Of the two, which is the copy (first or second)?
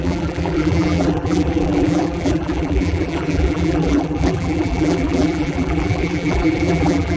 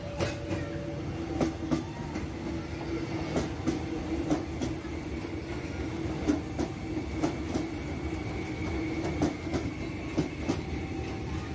first